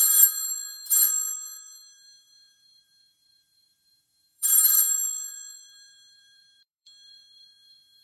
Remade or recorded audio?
remade